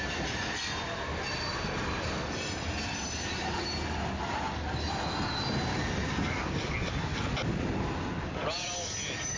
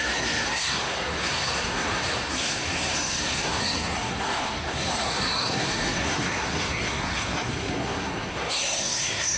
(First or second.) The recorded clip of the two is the first